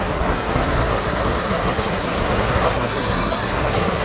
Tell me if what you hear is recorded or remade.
remade